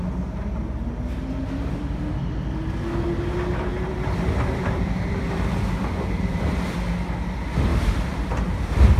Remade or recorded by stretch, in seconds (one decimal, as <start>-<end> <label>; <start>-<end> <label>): 0.0-3.7 recorded; 3.7-6.4 remade; 6.4-7.7 recorded; 7.7-9.0 remade